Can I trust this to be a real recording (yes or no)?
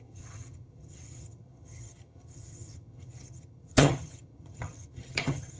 no